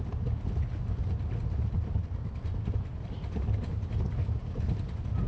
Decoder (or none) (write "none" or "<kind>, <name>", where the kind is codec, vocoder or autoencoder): none